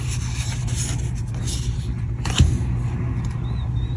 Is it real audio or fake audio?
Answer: real